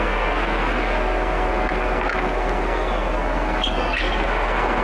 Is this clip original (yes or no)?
no